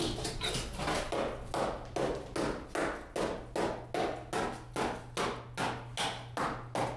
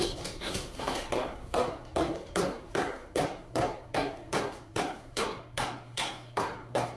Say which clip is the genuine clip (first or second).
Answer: first